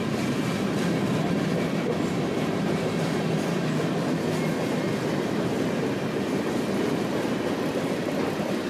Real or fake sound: real